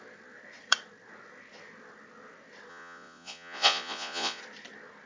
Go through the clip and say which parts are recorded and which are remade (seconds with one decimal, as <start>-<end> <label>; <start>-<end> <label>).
0.0-2.7 recorded; 2.7-4.4 remade; 4.4-5.1 recorded